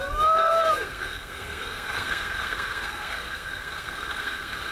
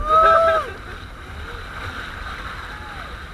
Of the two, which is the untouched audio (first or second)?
second